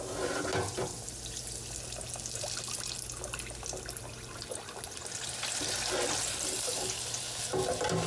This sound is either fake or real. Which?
real